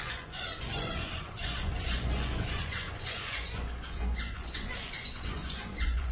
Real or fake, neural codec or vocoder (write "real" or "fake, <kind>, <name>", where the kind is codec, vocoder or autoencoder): fake, vocoder, Vocos